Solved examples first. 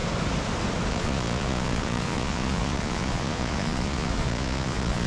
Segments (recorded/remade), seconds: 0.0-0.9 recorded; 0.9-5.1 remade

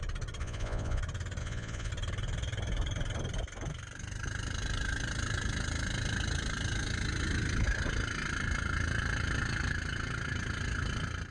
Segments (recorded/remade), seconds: 0.0-0.4 recorded; 0.4-1.0 remade; 1.0-1.4 recorded; 1.4-1.9 remade; 1.9-11.3 recorded

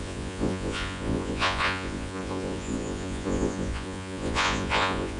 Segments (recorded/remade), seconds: 0.0-5.2 remade

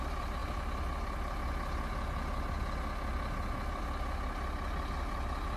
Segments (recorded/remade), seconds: 0.0-5.6 recorded

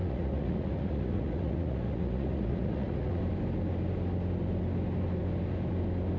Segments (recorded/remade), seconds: 0.0-3.2 remade; 3.2-6.2 recorded

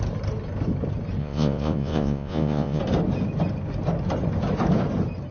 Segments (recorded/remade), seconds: 0.0-1.2 recorded; 1.2-2.8 remade; 2.8-5.3 recorded

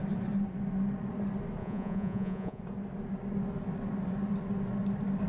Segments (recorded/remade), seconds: 0.0-1.6 recorded; 1.6-2.6 remade; 2.6-5.3 recorded